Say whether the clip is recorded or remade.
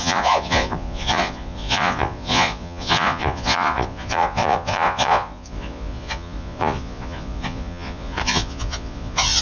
remade